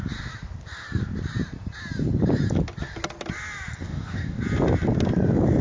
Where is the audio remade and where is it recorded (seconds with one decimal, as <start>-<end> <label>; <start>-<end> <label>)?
0.0-3.8 recorded; 3.8-4.4 remade; 4.4-5.6 recorded